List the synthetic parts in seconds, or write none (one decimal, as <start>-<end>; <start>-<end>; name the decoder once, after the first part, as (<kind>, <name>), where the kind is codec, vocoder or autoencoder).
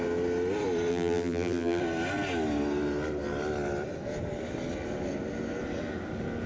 0.9-1.8 (vocoder, BigVGAN v2)